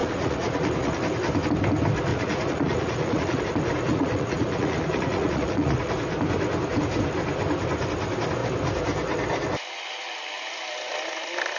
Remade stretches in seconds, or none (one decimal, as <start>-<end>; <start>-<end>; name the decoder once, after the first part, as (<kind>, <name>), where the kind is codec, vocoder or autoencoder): 0.0-0.9 (vocoder, Vocos); 2.1-3.4; 3.9-5.9